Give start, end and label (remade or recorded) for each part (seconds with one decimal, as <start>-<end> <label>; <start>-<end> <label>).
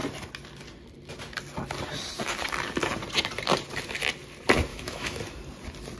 0.0-4.7 recorded; 4.7-5.2 remade; 5.2-6.0 recorded